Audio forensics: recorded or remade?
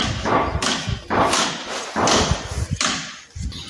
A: recorded